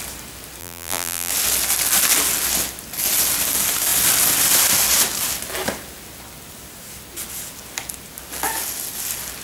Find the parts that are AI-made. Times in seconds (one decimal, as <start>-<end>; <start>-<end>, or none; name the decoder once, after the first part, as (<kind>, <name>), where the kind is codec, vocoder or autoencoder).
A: 0.6-1.3 (vocoder, BigVGAN v2)